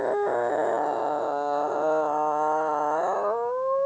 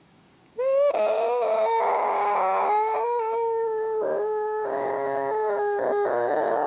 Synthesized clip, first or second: second